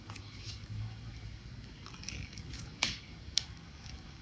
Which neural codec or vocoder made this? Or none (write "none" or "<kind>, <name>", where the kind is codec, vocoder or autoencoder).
codec, DAC